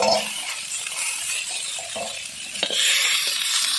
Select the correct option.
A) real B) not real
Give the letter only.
B